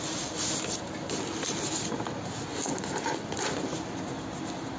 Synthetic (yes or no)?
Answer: no